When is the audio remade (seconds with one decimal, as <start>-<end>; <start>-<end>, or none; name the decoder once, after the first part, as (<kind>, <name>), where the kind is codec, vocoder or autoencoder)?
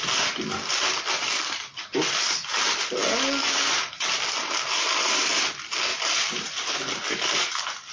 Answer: 3.4-4.1 (vocoder, BigVGAN v2); 5.9-7.9